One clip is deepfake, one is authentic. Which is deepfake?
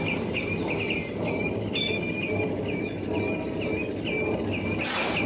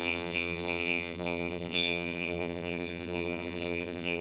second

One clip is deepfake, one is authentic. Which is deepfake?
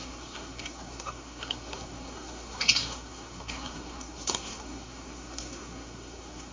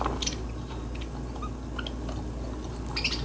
first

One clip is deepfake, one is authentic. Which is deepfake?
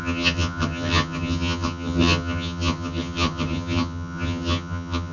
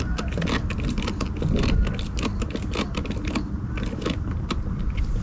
first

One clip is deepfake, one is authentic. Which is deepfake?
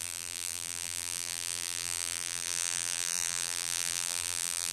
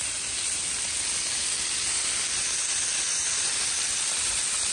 first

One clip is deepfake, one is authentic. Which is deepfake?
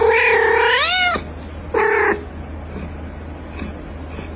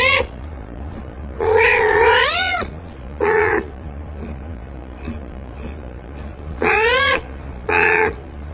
second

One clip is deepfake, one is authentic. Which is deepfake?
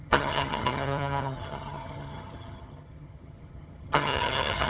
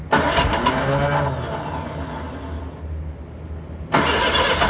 first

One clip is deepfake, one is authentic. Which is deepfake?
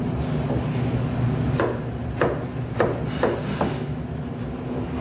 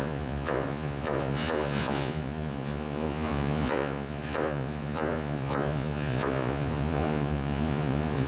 second